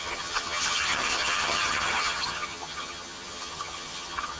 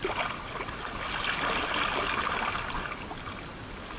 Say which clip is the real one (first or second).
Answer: second